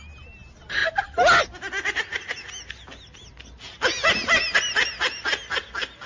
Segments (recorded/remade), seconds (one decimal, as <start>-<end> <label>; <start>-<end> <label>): 0.0-6.1 recorded